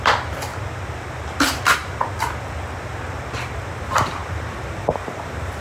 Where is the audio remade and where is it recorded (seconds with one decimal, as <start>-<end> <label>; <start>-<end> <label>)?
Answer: 0.0-4.2 recorded; 4.2-5.6 remade